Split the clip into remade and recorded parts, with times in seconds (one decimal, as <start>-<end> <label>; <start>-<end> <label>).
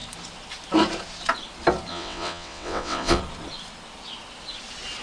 0.0-1.9 recorded; 1.9-3.2 remade; 3.2-5.0 recorded